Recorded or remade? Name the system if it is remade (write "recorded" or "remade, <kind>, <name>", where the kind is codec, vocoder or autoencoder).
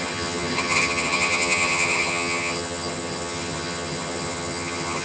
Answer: remade, vocoder, HiFi-GAN